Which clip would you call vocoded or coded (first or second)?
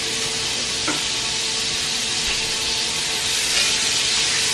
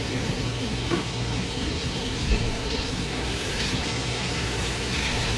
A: second